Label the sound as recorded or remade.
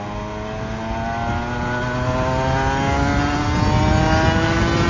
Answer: recorded